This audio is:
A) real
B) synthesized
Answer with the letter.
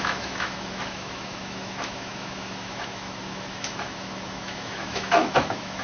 B